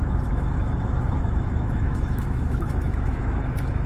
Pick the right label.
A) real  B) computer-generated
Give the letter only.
B